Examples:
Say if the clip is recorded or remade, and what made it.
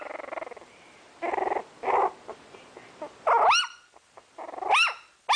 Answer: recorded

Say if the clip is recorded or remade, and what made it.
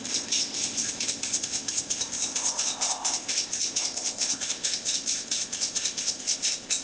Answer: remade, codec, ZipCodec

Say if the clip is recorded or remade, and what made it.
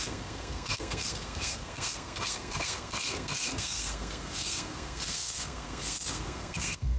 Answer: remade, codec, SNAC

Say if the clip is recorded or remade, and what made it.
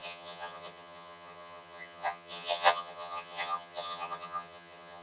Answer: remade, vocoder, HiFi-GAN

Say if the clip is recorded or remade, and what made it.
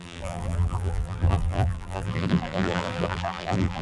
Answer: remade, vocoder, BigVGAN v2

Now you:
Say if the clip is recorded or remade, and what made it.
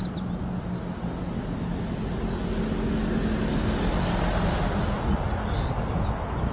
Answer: recorded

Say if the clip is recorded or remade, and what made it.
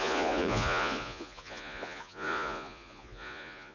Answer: remade, vocoder, Vocos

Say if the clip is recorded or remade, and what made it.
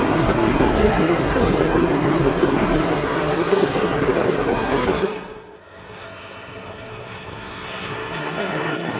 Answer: remade, codec, SNAC